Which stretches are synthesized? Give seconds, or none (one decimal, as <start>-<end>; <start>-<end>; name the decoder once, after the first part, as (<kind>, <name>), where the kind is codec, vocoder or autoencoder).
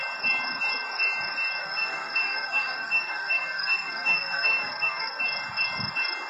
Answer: 1.6-5.2 (codec, SNAC)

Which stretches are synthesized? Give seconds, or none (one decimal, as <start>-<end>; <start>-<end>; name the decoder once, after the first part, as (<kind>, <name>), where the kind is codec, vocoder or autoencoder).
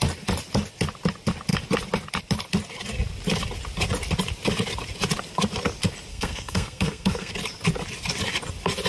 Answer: 6.1-7.3 (codec, SNAC)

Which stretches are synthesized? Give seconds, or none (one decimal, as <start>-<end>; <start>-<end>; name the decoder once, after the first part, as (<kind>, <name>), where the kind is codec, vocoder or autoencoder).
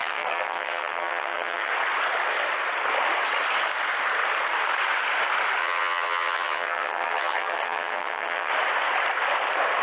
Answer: 0.0-1.7 (vocoder, HiFi-GAN); 5.6-8.5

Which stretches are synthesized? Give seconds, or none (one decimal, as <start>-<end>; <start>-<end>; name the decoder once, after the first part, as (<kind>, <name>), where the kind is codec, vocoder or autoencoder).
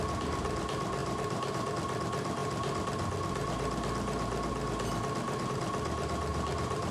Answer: 1.0-1.7 (vocoder, BigVGAN v2); 6.3-6.9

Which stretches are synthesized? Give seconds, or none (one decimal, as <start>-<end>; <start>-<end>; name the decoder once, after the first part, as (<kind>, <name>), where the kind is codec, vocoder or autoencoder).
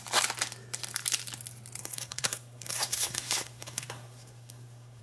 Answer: 1.8-5.0 (codec, SNAC)